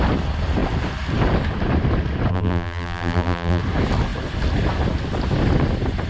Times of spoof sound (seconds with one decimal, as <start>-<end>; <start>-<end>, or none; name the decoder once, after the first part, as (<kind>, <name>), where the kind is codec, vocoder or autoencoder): 2.3-3.6 (vocoder, BigVGAN v2)